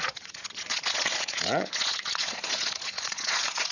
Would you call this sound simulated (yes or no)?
yes